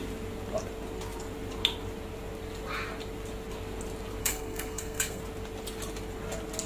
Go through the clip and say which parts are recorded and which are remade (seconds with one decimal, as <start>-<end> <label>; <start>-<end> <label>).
0.0-4.2 recorded; 4.2-5.2 remade; 5.2-6.7 recorded